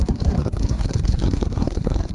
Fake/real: fake